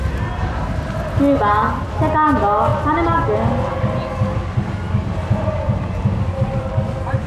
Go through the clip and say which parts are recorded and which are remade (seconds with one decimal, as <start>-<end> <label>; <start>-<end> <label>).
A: 0.0-7.3 recorded